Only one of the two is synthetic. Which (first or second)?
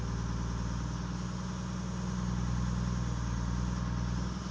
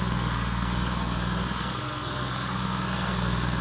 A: second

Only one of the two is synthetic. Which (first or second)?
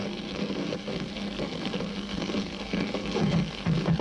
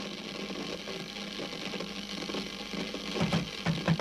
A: first